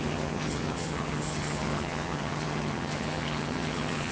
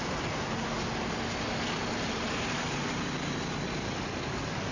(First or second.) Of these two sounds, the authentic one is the second